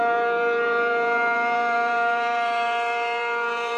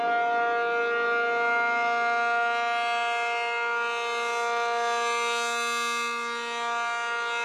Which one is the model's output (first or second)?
first